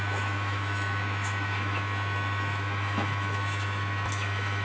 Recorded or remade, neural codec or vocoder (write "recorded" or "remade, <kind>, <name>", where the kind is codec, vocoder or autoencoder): remade, autoencoder, DAC-VAE